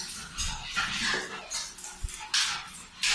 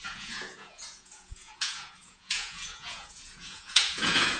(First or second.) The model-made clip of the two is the second